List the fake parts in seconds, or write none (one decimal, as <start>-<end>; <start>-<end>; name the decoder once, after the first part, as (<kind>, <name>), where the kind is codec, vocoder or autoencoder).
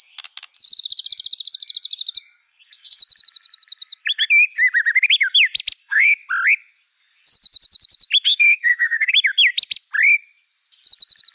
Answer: 2.4-3.0 (codec, SNAC); 5.8-6.3; 8.3-9.1